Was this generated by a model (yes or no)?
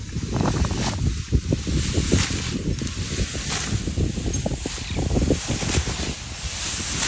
no